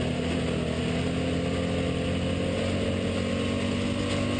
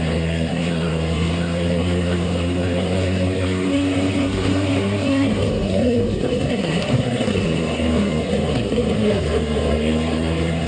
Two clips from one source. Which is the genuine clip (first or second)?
first